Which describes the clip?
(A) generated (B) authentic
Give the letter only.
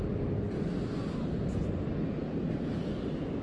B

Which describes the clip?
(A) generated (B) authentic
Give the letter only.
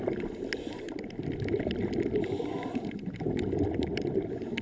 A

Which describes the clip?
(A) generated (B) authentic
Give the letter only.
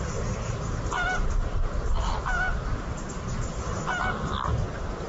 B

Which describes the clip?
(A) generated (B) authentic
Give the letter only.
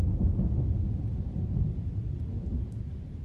B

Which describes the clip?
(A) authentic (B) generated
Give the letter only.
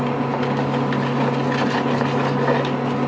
A